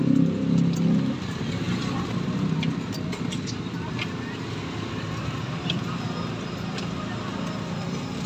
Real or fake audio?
real